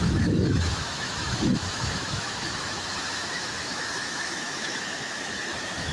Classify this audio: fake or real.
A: fake